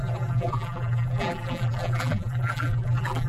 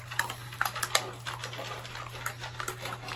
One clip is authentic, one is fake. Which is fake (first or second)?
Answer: first